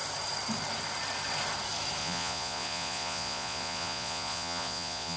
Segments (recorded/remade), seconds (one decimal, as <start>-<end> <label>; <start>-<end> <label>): 0.0-2.0 recorded; 2.0-5.2 remade